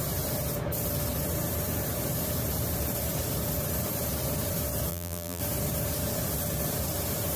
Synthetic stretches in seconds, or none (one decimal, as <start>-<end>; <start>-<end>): 4.9-5.4